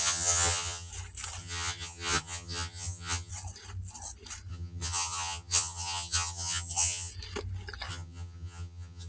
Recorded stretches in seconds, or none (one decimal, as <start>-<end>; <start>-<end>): 0.9-1.4; 3.3-4.5; 7.1-7.9